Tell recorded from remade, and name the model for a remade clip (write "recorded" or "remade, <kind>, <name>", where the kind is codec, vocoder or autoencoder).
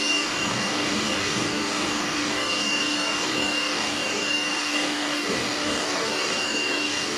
remade, codec, DAC